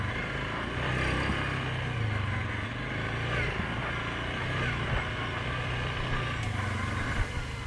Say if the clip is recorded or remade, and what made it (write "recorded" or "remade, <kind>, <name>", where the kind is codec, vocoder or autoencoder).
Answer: recorded